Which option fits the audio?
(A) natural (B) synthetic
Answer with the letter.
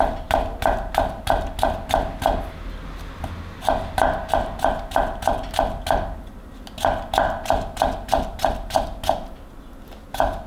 A